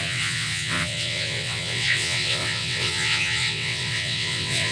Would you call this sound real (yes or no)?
no